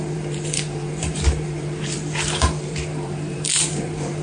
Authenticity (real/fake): fake